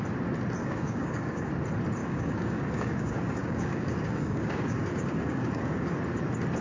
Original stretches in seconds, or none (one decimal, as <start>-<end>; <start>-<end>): 0.0-0.6; 1.5-2.0; 6.0-6.6